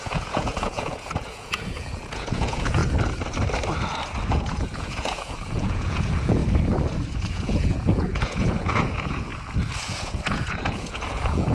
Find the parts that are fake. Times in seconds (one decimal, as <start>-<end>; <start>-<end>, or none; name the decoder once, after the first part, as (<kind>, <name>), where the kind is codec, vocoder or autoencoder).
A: 0.0-2.8 (vocoder, Vocos); 4.3-6.4; 7.3-9.3; 9.8-11.5